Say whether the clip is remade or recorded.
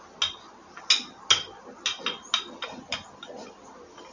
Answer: recorded